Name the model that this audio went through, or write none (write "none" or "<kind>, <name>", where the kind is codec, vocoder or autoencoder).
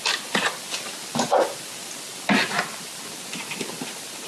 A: none